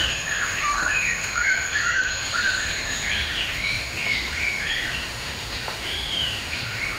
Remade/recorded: remade